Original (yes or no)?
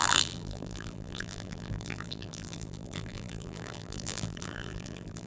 no